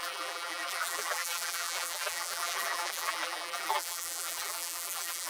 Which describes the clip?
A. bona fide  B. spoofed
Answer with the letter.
B